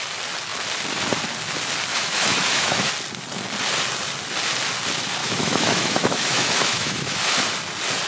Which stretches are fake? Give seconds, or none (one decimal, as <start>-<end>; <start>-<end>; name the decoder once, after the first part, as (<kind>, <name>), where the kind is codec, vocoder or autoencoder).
1.9-2.9 (autoencoder, DAC-VAE); 5.2-7.2